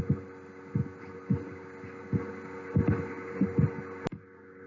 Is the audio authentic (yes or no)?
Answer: yes